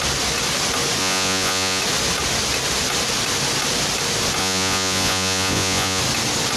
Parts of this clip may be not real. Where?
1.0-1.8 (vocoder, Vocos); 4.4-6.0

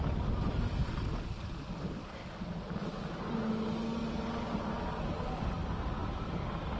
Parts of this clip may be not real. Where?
none

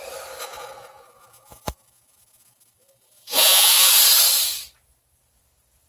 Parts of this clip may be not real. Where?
0.4-3.9 (vocoder, Vocos)

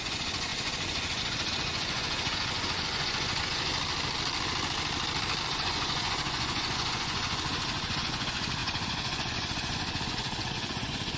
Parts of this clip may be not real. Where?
0.0-3.7 (vocoder, Vocos); 5.5-11.2

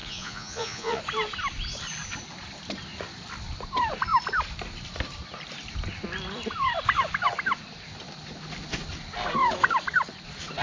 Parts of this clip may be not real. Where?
0.0-1.0 (vocoder, Vocos)